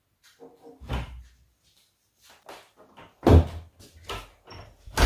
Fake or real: real